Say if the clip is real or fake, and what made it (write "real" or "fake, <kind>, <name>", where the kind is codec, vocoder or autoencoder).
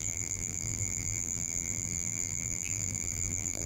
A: fake, vocoder, BigVGAN v2